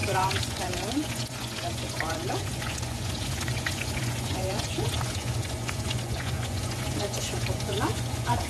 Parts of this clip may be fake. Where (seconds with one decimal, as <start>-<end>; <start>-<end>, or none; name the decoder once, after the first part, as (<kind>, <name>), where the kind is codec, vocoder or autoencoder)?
0.0-8.5 (vocoder, Vocos)